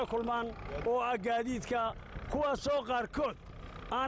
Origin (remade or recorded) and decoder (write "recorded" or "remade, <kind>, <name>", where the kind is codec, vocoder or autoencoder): recorded